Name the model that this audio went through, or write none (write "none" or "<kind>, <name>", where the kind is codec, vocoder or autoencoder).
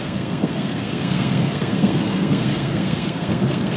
codec, SNAC